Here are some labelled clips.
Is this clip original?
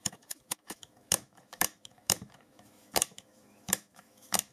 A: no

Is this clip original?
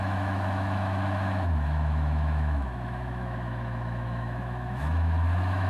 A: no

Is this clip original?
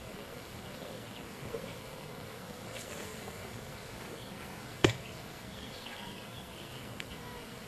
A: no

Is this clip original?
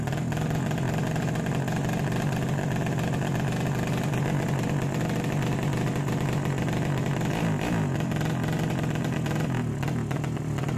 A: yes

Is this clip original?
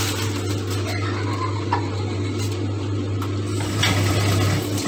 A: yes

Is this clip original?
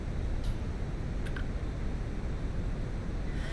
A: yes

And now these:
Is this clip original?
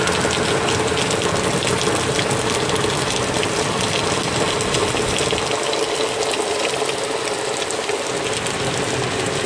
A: yes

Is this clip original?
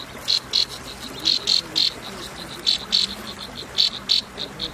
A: yes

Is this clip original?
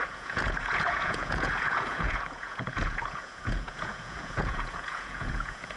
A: no